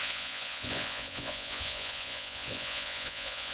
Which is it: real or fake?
fake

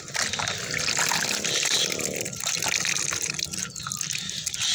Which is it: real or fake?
real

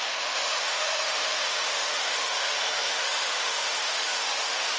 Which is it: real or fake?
fake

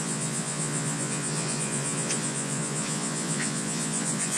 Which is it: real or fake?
fake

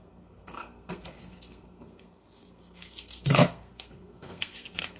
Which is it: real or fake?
fake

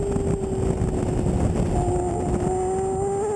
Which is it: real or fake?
real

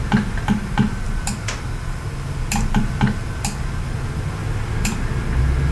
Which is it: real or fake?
real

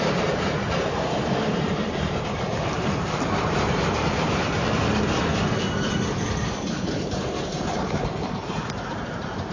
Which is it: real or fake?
fake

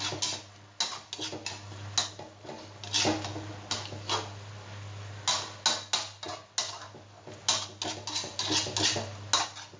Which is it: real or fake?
real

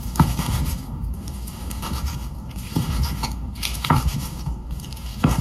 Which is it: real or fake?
fake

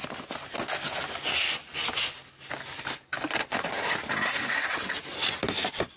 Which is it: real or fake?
real